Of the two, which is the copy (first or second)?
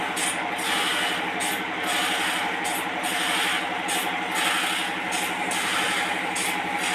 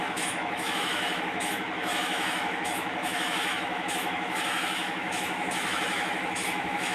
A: second